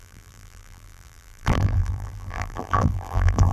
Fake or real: fake